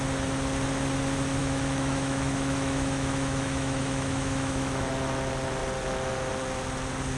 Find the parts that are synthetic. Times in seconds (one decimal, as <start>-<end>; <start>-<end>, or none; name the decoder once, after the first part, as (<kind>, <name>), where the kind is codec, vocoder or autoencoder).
1.4-4.9 (autoencoder, DAC-VAE)